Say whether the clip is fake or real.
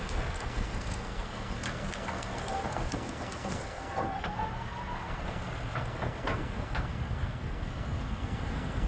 fake